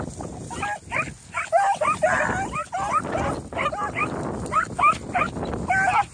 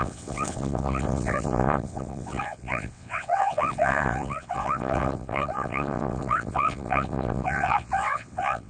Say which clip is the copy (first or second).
second